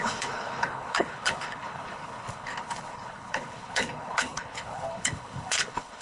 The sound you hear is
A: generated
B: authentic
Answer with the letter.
A